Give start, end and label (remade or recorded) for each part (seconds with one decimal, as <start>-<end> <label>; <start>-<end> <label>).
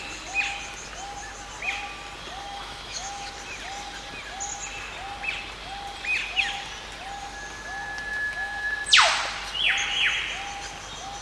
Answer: 0.0-2.4 recorded; 2.4-3.3 remade; 3.3-8.1 recorded; 8.1-8.7 remade; 8.7-11.2 recorded